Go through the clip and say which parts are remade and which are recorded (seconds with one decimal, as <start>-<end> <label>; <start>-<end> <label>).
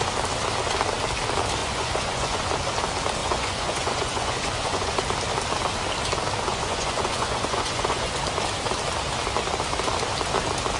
0.0-1.6 recorded; 1.6-2.5 remade; 2.5-3.2 recorded; 3.2-4.9 remade; 4.9-6.5 recorded; 6.5-8.2 remade; 8.2-10.8 recorded